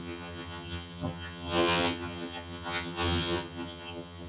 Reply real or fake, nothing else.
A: fake